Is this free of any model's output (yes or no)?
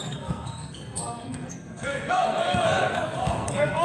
no